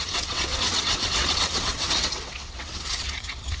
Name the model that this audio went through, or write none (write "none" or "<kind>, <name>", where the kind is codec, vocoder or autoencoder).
vocoder, WaveNeXt